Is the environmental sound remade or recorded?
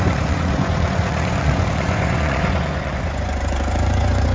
remade